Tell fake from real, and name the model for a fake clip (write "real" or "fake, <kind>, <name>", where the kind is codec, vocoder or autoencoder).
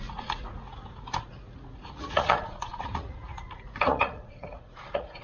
fake, vocoder, Vocos